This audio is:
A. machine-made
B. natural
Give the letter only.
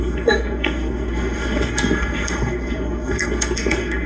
A